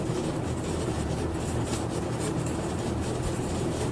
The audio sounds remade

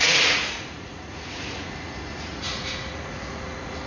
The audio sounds remade